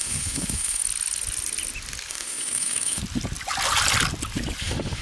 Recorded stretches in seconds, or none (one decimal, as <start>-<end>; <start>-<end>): 0.8-2.1; 3.0-4.6